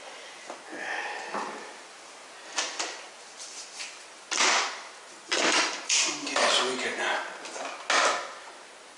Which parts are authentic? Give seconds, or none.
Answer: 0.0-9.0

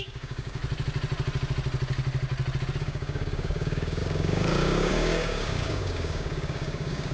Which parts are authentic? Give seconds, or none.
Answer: 0.6-2.8

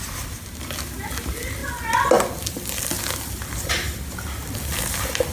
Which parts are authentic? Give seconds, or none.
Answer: 0.0-5.3

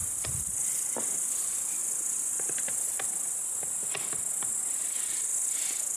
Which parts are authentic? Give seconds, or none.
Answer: 1.8-2.7; 5.3-6.0

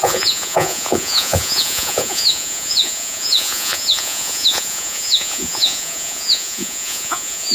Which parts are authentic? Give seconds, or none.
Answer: none

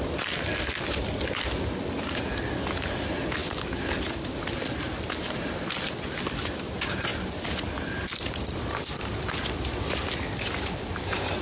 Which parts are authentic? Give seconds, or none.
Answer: 0.0-11.4

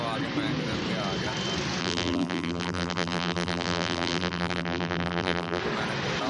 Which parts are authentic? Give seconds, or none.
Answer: 0.0-1.8; 5.6-6.3